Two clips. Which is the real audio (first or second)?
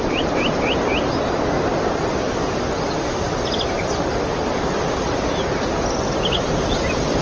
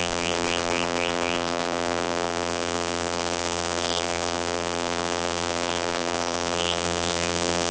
first